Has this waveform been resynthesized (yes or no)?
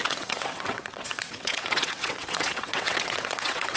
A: yes